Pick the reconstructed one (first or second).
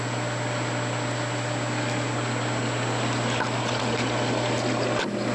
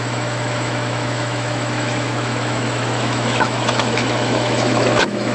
second